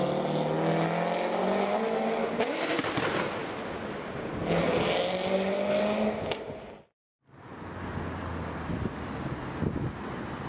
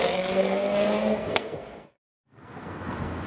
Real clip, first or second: first